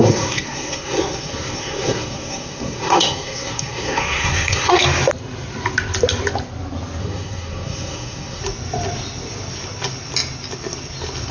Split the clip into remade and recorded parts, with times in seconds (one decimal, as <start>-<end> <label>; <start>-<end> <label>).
0.0-4.8 remade; 4.8-7.0 recorded; 7.0-8.4 remade; 8.4-11.3 recorded